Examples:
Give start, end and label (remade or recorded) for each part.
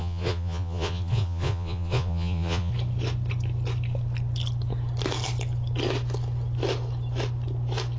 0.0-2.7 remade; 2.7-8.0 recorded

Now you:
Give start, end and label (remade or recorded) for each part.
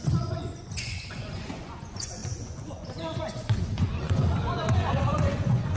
0.0-5.8 remade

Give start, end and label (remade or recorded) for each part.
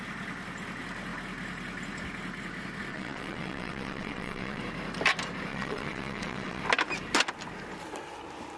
0.0-2.9 recorded; 2.9-4.6 remade; 4.6-5.5 recorded; 5.5-6.6 remade; 6.6-8.6 recorded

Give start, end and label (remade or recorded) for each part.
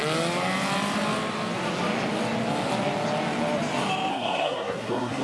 0.0-4.1 recorded; 4.1-5.2 remade